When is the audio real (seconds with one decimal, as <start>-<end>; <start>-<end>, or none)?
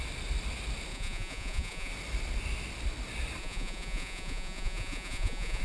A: 0.0-0.9; 1.9-3.4